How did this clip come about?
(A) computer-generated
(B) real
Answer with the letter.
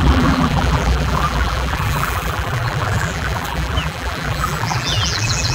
A